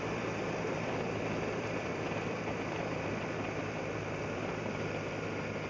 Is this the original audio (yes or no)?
no